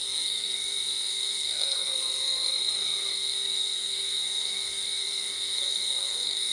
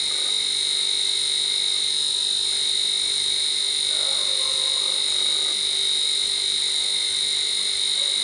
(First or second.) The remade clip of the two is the first